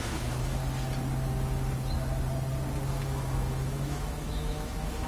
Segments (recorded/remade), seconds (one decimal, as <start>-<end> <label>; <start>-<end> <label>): 0.0-0.6 remade; 0.6-2.9 recorded; 2.9-5.1 remade